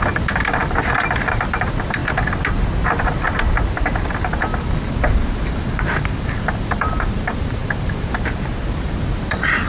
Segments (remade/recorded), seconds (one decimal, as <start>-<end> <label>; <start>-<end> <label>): 0.0-2.0 remade; 2.0-4.4 recorded; 4.4-7.6 remade; 7.6-8.7 recorded; 8.7-9.7 remade